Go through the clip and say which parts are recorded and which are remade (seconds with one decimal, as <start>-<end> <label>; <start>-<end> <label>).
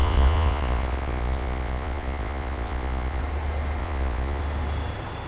0.0-3.2 remade; 3.2-3.8 recorded; 3.8-4.4 remade; 4.4-5.3 recorded